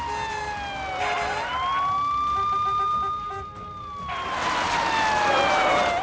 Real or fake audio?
real